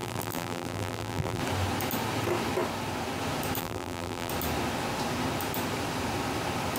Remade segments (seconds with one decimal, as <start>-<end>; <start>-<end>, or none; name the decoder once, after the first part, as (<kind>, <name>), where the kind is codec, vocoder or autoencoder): 0.0-1.4 (vocoder, BigVGAN v2); 3.6-4.3